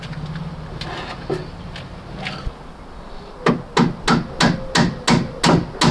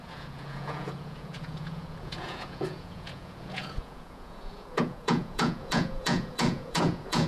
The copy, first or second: second